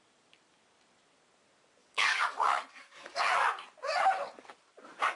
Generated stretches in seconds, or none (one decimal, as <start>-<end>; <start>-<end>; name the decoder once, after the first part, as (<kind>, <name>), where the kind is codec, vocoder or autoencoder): 1.8-3.2 (codec, DAC)